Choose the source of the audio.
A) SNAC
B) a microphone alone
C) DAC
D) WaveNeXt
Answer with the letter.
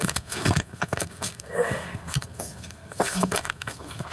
A